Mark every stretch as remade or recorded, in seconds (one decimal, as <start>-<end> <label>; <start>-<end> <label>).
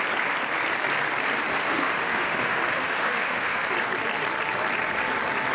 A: 0.0-1.6 recorded; 1.6-3.7 remade; 3.7-5.5 recorded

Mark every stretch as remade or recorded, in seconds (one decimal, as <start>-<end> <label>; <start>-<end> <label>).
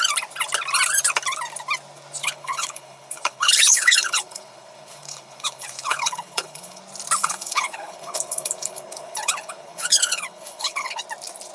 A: 0.0-2.2 recorded; 2.2-6.8 remade; 6.8-7.2 recorded; 7.2-11.0 remade; 11.0-11.5 recorded